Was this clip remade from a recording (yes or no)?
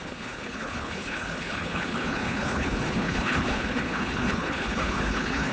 yes